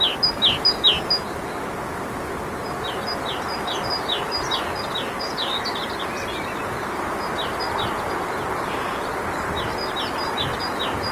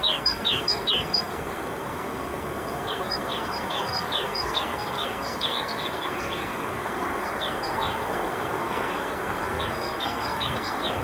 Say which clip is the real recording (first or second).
first